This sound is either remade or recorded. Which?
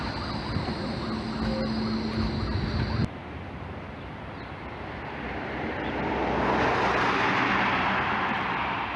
recorded